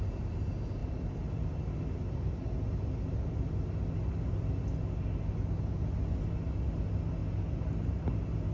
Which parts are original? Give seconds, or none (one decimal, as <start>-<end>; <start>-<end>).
0.0-8.5